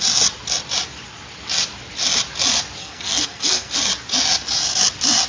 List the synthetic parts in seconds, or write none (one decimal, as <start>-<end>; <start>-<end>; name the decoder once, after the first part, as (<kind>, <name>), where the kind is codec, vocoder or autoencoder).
2.8-3.7 (codec, SNAC)